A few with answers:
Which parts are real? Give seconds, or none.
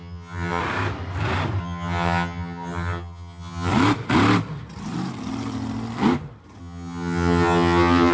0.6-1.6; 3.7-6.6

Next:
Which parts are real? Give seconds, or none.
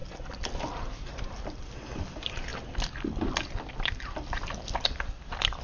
0.0-5.6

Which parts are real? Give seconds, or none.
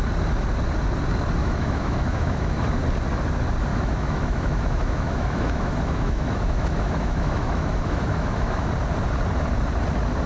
0.0-1.4; 2.7-3.7; 8.7-10.3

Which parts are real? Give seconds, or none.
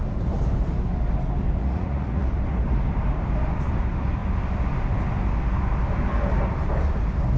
0.0-1.6; 2.3-7.4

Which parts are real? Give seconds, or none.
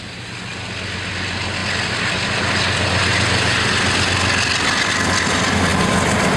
0.0-6.4